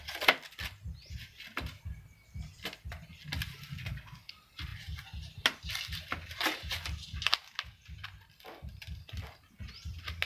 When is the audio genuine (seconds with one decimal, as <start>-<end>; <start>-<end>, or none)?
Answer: 0.0-3.8; 4.3-10.3